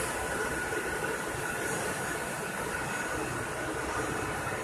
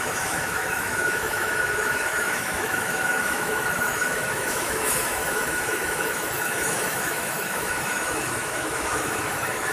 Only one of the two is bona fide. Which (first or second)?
first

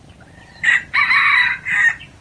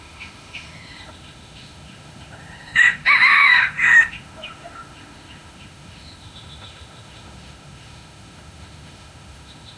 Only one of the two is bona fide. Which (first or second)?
first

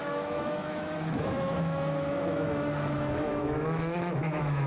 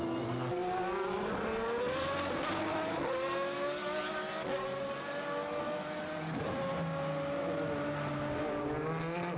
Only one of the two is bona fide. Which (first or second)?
second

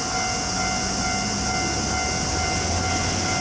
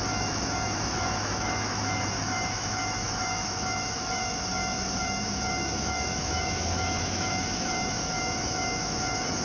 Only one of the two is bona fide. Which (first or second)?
first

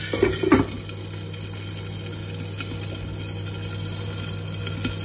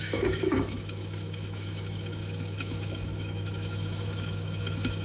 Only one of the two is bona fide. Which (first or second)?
first